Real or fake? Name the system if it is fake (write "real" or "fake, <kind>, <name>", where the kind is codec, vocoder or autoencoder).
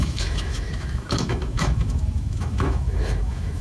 fake, autoencoder, DAC-VAE